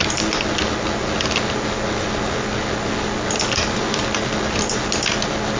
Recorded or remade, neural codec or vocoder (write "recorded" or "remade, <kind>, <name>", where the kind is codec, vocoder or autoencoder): recorded